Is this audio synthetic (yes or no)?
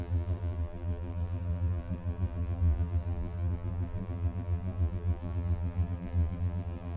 yes